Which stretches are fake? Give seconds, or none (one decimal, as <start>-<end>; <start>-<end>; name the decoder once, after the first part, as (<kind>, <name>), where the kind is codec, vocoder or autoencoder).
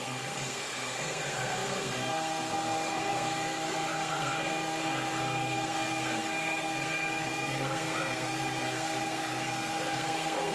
0.0-10.5 (codec, SNAC)